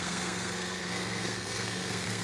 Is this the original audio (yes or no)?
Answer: no